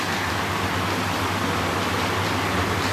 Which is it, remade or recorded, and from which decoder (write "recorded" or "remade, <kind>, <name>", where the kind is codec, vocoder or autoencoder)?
recorded